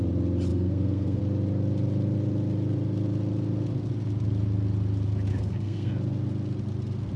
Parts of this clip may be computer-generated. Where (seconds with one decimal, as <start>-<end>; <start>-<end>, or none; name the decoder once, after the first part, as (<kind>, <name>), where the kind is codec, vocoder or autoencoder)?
0.5-1.2 (codec, SNAC); 5.3-5.9